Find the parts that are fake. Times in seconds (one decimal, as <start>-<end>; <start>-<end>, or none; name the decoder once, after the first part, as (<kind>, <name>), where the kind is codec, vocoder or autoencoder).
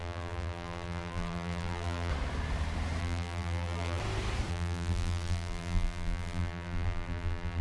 0.0-2.1 (vocoder, BigVGAN v2); 3.0-4.0; 4.5-7.6